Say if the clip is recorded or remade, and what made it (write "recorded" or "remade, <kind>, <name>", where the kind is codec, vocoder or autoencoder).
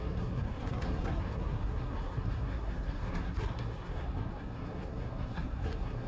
remade, codec, SNAC